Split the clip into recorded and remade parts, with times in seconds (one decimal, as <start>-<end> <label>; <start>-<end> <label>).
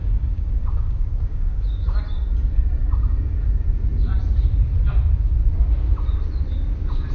0.0-2.0 remade; 2.0-7.1 recorded